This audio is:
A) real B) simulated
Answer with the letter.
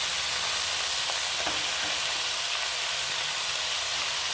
A